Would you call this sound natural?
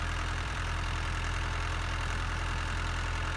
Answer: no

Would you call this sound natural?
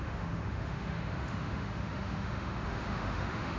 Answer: no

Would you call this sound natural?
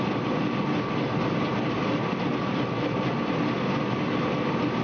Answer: yes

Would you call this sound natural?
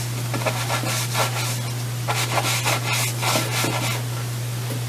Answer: yes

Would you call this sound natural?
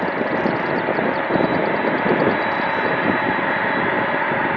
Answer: yes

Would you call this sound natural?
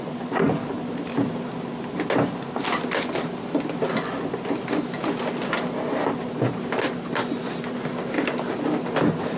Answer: yes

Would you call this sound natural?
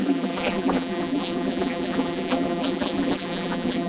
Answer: no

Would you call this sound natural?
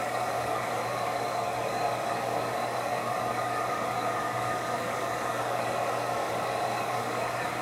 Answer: no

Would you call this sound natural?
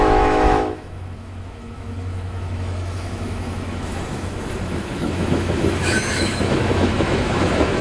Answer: no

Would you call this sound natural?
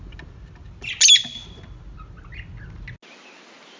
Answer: yes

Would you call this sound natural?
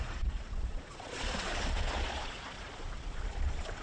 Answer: no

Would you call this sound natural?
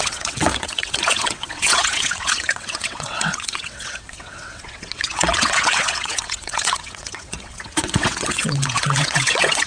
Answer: no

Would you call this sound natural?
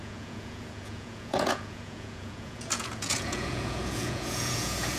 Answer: no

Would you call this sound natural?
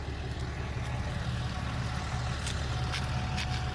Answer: yes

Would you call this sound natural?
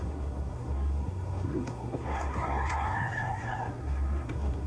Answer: no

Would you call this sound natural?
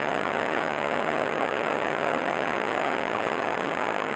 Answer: no